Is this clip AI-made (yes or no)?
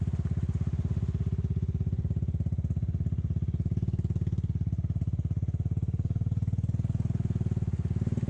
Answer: no